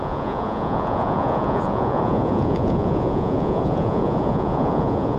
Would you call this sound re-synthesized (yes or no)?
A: yes